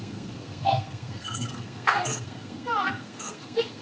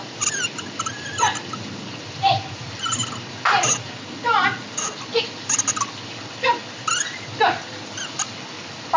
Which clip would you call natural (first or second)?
second